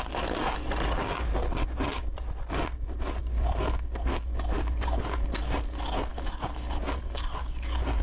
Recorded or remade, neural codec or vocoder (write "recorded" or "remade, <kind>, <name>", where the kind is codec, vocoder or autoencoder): recorded